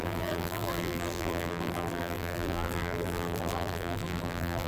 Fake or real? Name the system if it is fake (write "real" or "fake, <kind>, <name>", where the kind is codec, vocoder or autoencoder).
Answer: fake, vocoder, BigVGAN v2